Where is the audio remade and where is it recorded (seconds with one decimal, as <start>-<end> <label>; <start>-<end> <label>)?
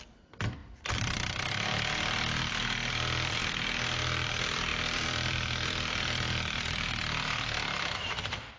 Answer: 0.0-3.4 remade; 3.4-4.0 recorded; 4.0-8.6 remade